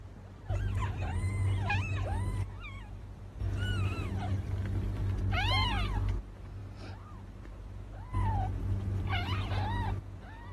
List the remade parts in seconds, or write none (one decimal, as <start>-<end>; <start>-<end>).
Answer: none